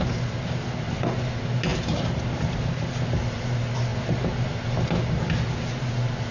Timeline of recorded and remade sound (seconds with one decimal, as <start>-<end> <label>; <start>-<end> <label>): 0.0-1.7 recorded; 1.7-2.8 remade; 2.8-6.3 recorded